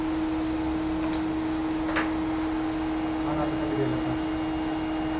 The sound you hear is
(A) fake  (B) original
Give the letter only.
B